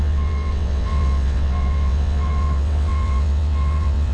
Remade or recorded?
remade